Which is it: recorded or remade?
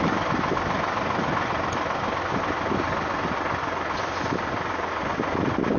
recorded